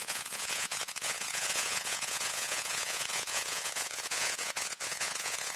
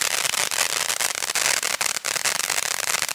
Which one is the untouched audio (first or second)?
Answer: second